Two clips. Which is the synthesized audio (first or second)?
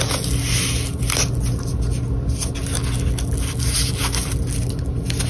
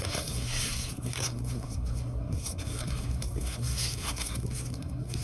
second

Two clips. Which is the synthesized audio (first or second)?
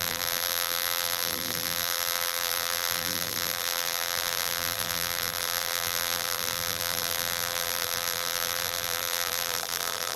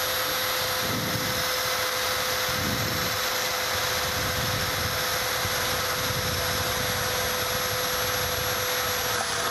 first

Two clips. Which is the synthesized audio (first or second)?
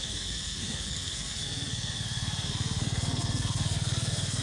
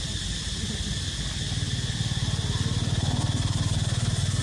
first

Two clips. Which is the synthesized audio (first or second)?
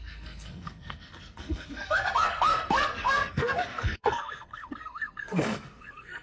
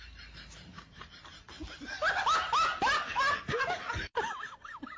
first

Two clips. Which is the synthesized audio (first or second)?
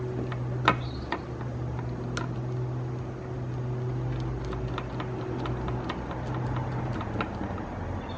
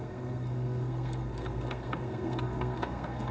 second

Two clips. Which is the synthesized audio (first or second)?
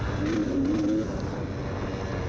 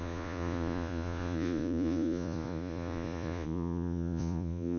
second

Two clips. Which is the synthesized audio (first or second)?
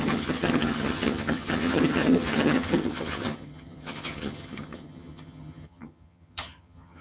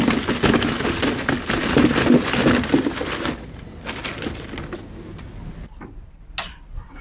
first